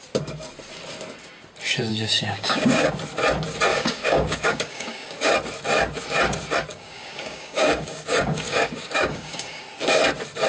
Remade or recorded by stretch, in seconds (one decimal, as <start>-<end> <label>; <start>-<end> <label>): 0.0-1.9 recorded; 1.9-2.9 remade; 2.9-3.7 recorded; 3.7-5.3 remade; 5.3-6.7 recorded; 6.7-9.6 remade; 9.6-10.5 recorded

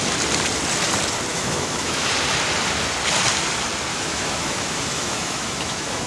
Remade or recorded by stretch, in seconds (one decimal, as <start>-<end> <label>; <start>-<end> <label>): 0.0-1.3 recorded; 1.3-2.1 remade; 2.1-3.9 recorded; 3.9-6.1 remade

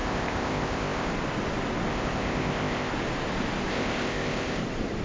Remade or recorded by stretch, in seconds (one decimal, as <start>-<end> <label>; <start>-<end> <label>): 0.0-1.1 remade; 1.1-1.9 recorded; 1.9-2.9 remade; 2.9-3.7 recorded; 3.7-4.6 remade; 4.6-5.0 recorded

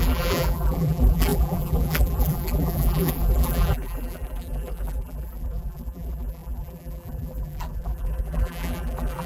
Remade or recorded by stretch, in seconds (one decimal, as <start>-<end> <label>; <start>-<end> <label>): 0.0-9.3 remade